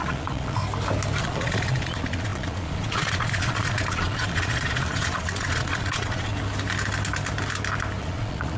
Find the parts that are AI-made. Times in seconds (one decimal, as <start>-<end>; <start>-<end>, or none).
0.0-0.6; 1.2-6.3; 8.0-8.6